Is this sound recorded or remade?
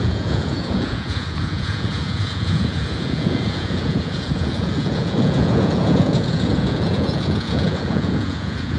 remade